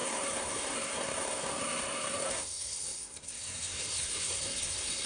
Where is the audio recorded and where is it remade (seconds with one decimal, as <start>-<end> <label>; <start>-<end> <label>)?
0.0-5.1 remade